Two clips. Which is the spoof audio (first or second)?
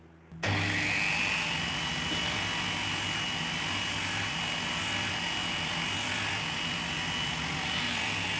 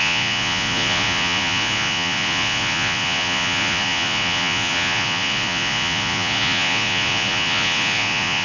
second